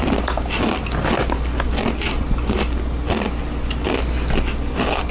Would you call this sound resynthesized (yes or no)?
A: no